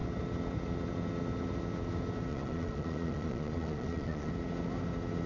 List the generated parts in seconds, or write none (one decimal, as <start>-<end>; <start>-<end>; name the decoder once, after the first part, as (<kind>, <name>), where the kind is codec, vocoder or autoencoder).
2.3-4.3 (vocoder, Vocos)